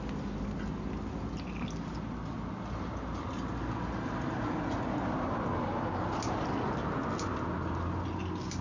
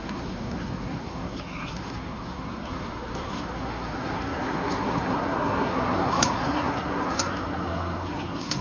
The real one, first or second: first